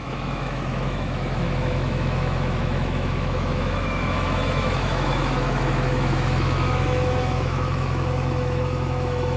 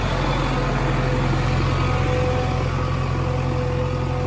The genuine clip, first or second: second